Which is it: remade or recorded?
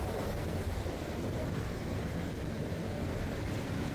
remade